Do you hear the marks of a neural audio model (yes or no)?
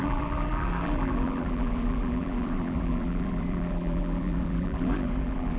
yes